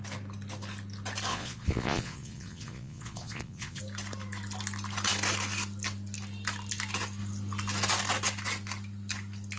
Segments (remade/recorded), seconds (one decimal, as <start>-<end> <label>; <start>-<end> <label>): 0.0-1.3 recorded; 1.3-3.8 remade; 3.8-9.6 recorded